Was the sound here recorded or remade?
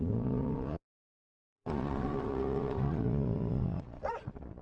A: remade